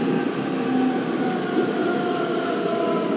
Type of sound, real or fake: real